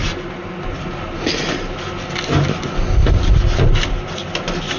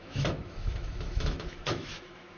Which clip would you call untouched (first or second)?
first